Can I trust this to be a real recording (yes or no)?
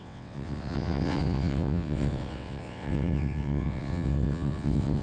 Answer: no